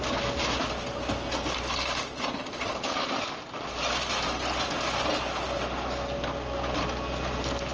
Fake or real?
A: real